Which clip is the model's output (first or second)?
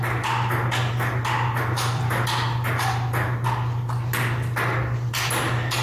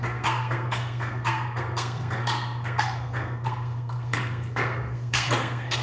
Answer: second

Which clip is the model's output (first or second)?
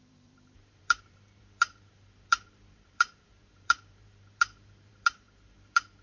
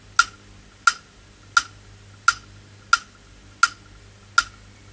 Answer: first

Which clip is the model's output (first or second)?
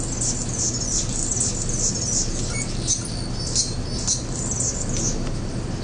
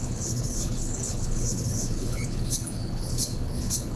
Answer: second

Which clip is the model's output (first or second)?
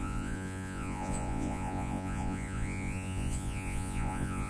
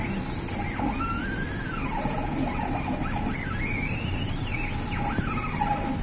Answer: first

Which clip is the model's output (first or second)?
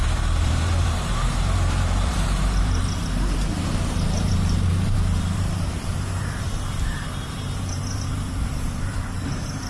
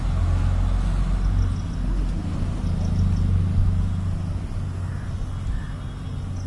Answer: first